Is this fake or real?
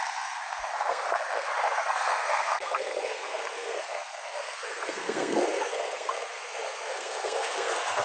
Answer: fake